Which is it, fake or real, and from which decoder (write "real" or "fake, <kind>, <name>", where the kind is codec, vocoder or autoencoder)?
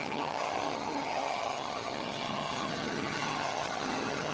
fake, vocoder, HiFi-GAN